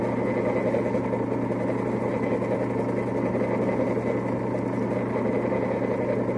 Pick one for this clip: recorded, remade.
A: recorded